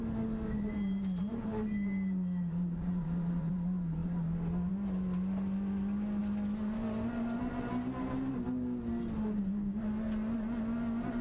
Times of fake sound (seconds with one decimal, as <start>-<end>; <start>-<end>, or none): 2.8-3.5